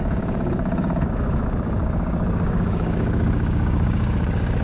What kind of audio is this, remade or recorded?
remade